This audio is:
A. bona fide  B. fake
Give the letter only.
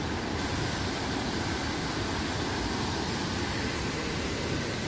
A